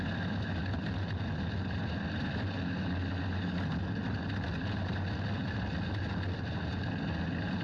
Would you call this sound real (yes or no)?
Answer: yes